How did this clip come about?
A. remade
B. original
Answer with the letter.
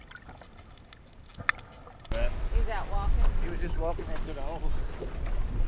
B